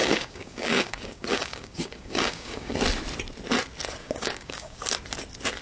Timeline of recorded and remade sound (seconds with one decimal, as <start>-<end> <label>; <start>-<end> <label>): 0.0-2.7 remade; 2.7-4.0 recorded; 4.0-4.8 remade; 4.8-5.6 recorded